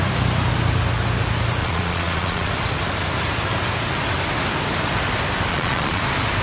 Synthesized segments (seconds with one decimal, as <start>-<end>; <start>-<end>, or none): 1.6-2.5; 5.5-6.0